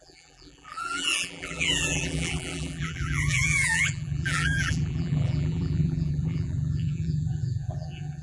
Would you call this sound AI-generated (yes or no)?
yes